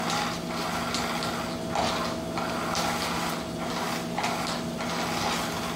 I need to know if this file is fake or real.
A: real